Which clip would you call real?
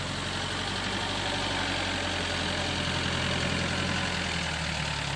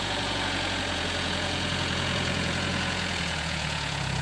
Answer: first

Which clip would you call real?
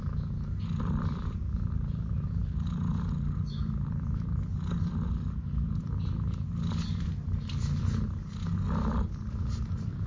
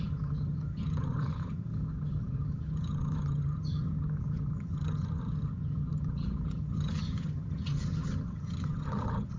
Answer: first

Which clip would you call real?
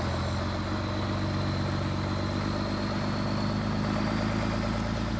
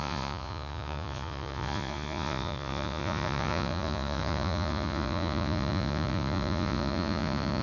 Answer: first